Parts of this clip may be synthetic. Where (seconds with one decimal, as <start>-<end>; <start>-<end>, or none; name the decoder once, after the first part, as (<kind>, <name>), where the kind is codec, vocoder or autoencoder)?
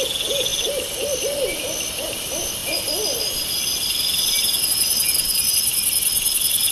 none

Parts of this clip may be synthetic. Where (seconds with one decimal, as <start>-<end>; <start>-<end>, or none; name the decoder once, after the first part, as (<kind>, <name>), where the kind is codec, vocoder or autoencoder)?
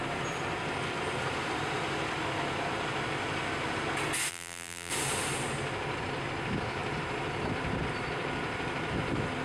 4.3-4.9 (vocoder, BigVGAN v2)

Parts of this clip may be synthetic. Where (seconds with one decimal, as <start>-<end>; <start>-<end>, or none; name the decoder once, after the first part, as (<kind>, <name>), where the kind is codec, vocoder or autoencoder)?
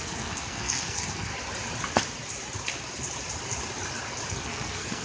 0.0-1.3 (codec, SNAC); 4.3-5.0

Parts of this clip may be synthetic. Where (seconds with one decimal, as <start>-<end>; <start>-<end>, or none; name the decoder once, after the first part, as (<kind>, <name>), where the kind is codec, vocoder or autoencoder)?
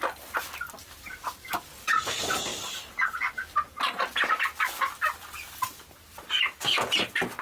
none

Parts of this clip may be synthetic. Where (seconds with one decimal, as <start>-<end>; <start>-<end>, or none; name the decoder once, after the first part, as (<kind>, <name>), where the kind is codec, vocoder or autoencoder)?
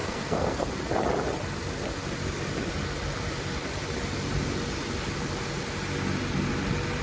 0.0-0.7 (codec, SNAC)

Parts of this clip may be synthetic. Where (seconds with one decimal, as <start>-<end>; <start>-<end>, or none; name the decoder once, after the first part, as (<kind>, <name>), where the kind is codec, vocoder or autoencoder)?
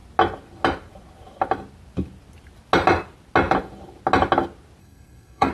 4.8-5.5 (codec, SNAC)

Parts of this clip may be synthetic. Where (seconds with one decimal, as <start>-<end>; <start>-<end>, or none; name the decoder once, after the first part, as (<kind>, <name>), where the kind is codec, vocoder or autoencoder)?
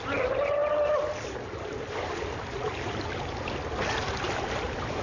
none